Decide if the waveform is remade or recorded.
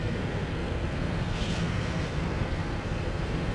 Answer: remade